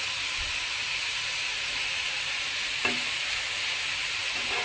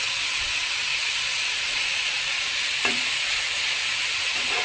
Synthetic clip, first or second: second